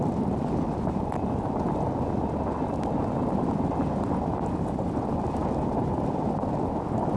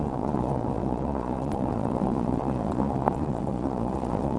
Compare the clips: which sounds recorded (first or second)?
first